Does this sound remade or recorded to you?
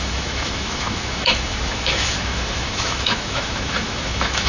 remade